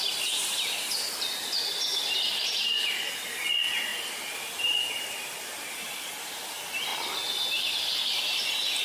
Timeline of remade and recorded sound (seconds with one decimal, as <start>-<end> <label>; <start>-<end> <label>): 0.0-1.9 recorded; 1.9-2.5 remade; 2.5-3.9 recorded; 3.9-6.1 remade; 6.1-8.8 recorded